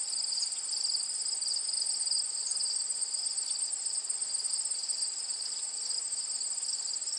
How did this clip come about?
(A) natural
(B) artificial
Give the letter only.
A